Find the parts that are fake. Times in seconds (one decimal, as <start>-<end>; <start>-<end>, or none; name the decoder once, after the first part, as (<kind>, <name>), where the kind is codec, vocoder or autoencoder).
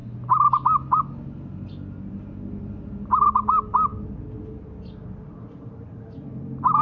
none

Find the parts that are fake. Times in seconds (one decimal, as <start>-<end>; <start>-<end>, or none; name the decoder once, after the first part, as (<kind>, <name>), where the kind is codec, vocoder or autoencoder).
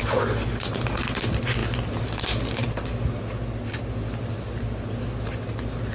none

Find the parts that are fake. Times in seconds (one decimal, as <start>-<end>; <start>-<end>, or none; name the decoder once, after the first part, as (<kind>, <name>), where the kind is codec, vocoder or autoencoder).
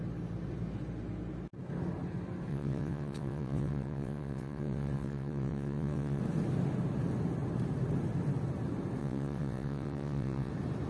2.5-6.2 (vocoder, WaveNeXt); 9.0-10.5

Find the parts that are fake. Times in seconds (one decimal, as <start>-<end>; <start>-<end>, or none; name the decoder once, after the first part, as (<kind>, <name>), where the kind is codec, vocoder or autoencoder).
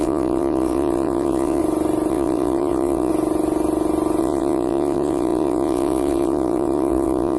0.0-1.6 (vocoder, WaveNeXt); 2.1-3.1; 4.2-7.4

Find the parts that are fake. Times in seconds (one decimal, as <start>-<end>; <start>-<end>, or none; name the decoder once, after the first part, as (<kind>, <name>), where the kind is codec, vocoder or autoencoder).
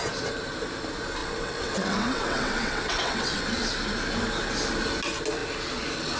1.2-3.4 (vocoder, WaveNeXt)